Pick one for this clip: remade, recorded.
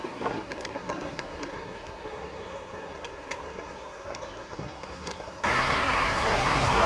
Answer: remade